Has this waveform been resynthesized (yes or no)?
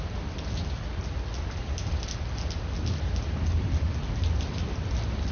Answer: no